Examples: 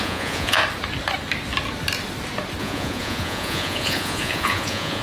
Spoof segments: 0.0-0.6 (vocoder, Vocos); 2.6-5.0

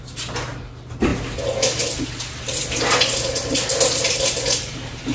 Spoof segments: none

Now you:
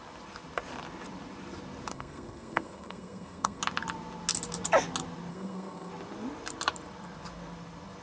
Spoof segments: 1.9-3.6 (codec, SNAC); 5.3-5.9

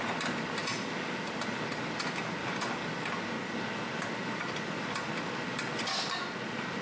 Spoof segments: none